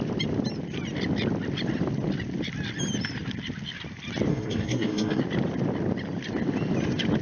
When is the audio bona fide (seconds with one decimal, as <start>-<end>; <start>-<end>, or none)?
0.0-4.3; 5.2-7.2